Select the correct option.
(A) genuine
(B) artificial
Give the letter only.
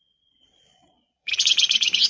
B